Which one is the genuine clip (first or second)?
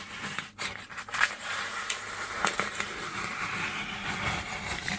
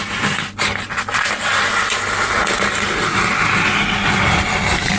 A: second